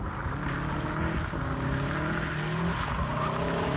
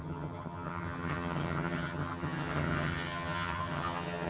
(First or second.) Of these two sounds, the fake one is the second